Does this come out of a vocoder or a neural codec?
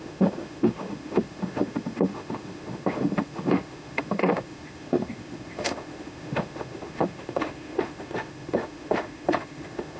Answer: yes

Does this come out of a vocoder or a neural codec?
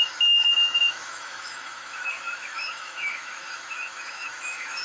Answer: yes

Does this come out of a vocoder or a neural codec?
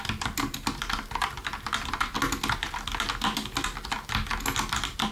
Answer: no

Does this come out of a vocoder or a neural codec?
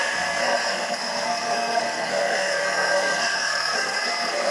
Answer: yes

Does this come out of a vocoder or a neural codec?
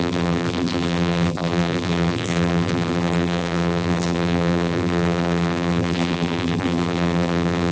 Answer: yes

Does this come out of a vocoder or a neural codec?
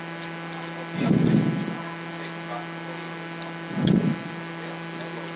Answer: no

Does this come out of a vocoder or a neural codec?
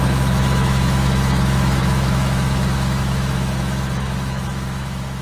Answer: yes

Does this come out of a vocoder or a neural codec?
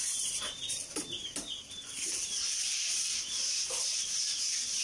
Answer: yes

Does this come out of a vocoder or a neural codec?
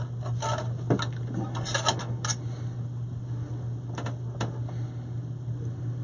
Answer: no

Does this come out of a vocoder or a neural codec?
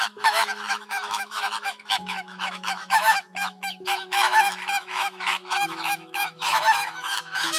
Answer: yes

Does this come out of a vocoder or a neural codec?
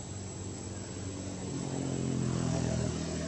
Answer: no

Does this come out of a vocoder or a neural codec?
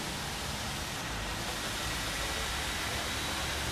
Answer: no